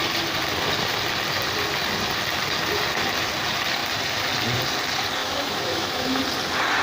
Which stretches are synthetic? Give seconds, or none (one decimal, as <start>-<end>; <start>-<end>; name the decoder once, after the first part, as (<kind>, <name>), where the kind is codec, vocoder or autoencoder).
5.2-6.2 (autoencoder, DAC-VAE)